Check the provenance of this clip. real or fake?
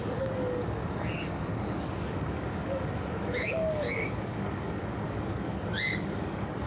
fake